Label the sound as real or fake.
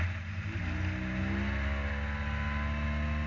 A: real